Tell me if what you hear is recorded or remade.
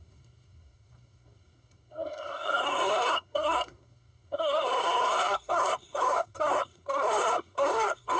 remade